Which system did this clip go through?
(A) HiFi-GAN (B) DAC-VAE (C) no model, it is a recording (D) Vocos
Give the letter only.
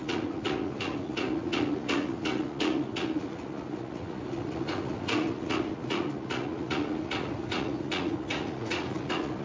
D